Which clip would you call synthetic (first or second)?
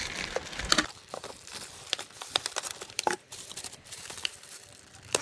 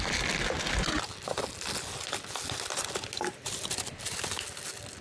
first